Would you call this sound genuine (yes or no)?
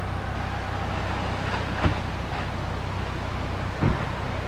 yes